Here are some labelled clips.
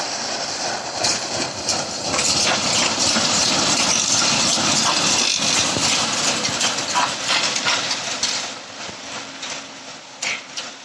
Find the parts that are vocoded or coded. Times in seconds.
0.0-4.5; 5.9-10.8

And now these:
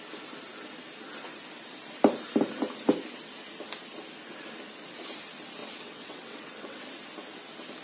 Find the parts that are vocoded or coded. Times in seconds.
5.6-6.9

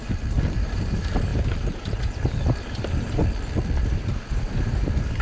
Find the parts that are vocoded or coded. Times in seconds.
0.0-3.2; 3.8-5.2

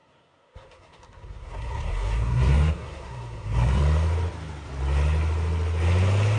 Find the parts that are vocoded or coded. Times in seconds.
0.0-3.8

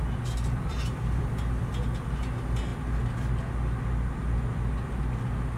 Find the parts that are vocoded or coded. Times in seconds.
0.7-1.7